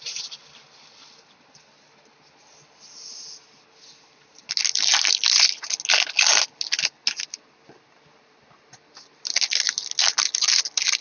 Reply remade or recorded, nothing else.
recorded